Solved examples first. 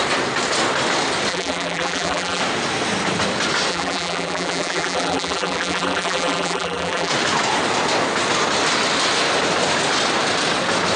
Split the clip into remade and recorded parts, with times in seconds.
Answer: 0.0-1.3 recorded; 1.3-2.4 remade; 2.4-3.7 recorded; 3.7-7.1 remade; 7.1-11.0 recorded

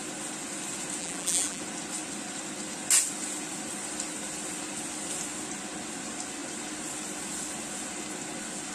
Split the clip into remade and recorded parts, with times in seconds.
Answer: 0.0-1.0 recorded; 1.0-1.6 remade; 1.6-8.7 recorded

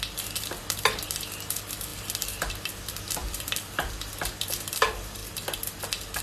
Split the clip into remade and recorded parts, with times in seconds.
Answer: 0.0-3.2 recorded; 3.2-4.1 remade; 4.1-6.2 recorded

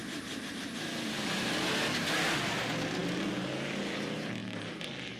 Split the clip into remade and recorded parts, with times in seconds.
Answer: 0.0-0.7 remade; 0.7-5.2 recorded

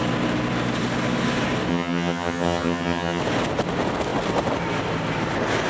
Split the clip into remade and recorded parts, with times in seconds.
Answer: 0.0-1.7 recorded; 1.7-3.2 remade; 3.2-5.7 recorded

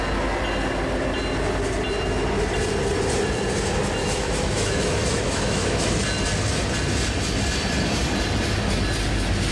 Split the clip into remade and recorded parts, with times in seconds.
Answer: 0.0-4.0 recorded; 4.0-5.9 remade; 5.9-9.5 recorded

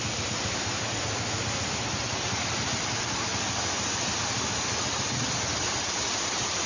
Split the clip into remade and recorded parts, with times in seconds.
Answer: 0.0-2.0 recorded; 2.0-3.3 remade; 3.3-5.8 recorded; 5.8-6.7 remade